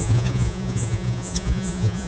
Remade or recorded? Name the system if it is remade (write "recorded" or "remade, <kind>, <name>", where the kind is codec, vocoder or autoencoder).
remade, vocoder, Vocos